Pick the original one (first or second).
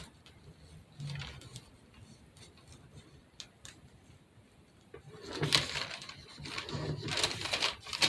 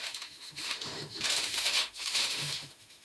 first